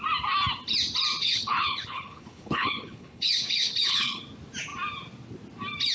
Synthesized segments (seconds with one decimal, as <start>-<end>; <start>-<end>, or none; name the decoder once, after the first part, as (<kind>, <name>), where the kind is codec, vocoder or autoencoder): 1.2-4.2 (codec, HILCodec)